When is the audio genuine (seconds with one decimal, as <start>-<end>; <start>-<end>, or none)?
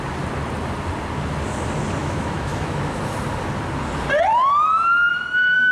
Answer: 0.0-2.0; 3.0-5.1